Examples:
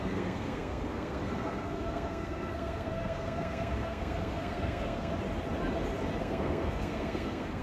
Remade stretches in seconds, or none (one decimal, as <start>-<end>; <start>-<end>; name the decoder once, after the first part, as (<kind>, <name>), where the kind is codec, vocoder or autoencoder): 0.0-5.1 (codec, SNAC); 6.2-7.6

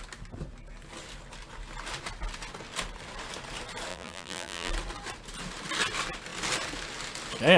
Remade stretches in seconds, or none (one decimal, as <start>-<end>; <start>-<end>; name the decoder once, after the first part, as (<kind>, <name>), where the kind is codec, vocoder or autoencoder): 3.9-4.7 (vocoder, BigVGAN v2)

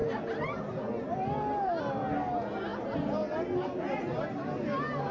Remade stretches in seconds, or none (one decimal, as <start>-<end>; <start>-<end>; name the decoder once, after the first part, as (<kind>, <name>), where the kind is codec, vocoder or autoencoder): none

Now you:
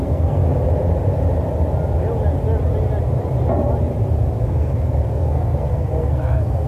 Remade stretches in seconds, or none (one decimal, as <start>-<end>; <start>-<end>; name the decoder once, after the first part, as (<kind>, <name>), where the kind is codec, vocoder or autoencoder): 0.0-0.4 (codec, SNAC); 4.4-6.7

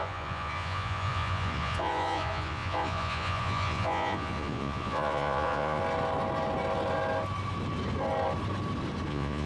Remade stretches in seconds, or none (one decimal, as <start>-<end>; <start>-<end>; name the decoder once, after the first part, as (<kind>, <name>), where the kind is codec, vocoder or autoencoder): 0.0-5.8 (vocoder, Vocos); 9.1-9.5